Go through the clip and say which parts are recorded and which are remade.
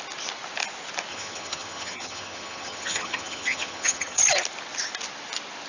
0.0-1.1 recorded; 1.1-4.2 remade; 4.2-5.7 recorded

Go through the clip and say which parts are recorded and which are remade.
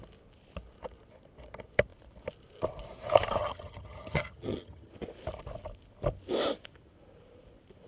0.0-3.4 recorded; 3.4-4.9 remade; 4.9-7.9 recorded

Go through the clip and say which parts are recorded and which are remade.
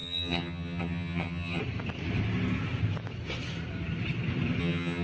0.0-1.6 remade; 1.6-4.6 recorded; 4.6-5.0 remade